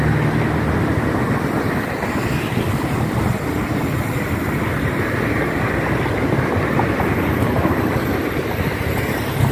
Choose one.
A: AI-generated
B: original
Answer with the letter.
B